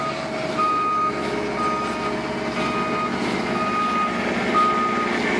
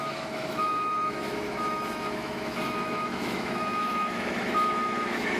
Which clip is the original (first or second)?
first